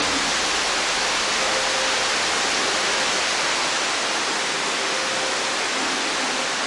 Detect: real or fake real